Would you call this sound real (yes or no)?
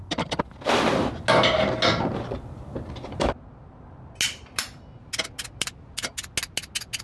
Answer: yes